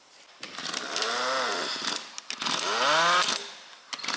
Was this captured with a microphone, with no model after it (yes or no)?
yes